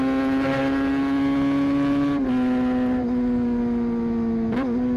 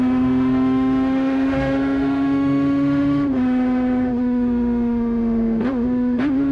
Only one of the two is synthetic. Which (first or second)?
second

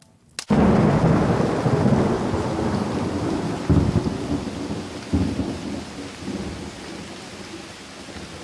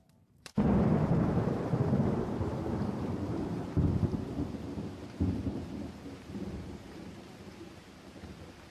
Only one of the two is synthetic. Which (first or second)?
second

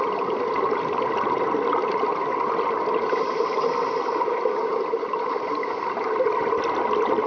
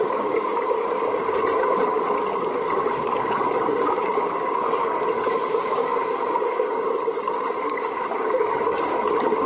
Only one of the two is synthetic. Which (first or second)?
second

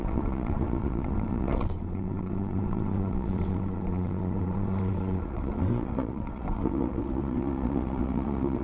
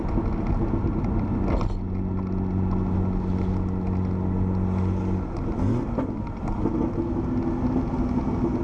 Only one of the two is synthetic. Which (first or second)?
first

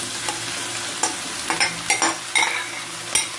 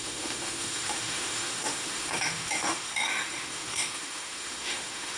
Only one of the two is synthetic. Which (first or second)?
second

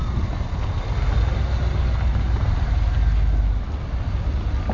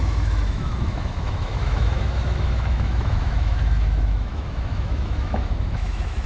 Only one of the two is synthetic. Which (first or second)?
second